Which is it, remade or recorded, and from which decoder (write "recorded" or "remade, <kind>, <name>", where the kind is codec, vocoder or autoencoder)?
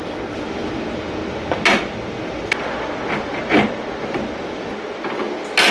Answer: recorded